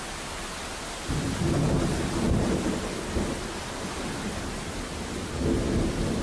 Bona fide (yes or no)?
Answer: yes